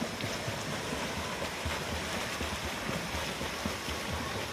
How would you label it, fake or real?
real